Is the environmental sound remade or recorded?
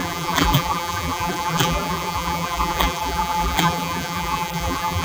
remade